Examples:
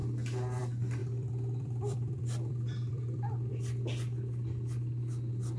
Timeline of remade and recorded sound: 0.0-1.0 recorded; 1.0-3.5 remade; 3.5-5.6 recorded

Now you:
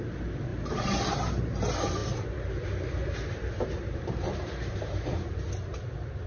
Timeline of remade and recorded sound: 0.0-0.5 recorded; 0.5-1.5 remade; 1.5-2.0 recorded; 2.0-5.5 remade; 5.5-6.3 recorded

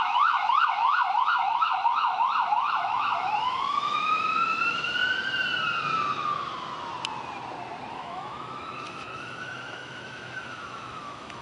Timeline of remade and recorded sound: 0.0-5.0 remade; 5.0-7.9 recorded; 7.9-11.4 remade

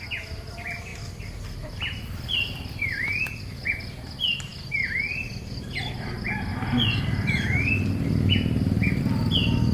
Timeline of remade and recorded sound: 0.0-0.9 recorded; 0.9-3.4 remade; 3.4-4.5 recorded; 4.5-5.7 remade; 5.7-6.5 recorded; 6.5-9.0 remade; 9.0-9.7 recorded